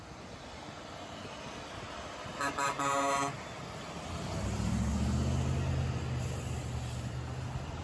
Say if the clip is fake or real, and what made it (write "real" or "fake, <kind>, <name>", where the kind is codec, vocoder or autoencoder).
real